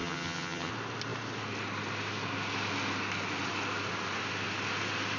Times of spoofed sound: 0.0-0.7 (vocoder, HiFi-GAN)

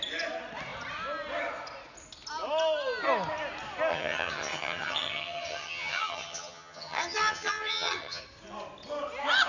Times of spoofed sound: 3.9-8.2 (vocoder, HiFi-GAN)

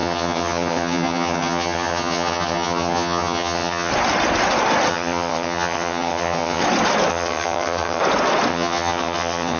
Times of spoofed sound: 0.0-3.9 (vocoder, HiFi-GAN); 4.9-6.6; 7.1-8.0; 8.5-9.6

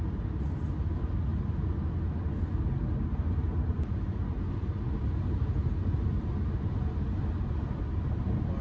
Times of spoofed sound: none

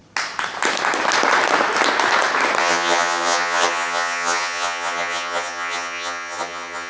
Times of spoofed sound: 2.6-6.9 (vocoder, HiFi-GAN)

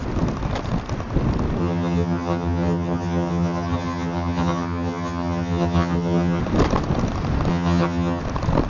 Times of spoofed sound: 1.6-6.4 (vocoder, HiFi-GAN); 7.5-8.2